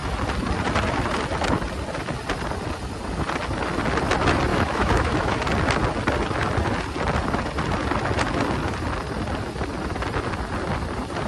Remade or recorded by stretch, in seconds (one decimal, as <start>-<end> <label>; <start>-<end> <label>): 0.0-4.5 recorded; 4.5-5.4 remade; 5.4-11.3 recorded